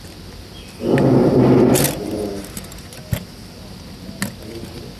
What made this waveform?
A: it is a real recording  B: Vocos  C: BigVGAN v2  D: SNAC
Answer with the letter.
A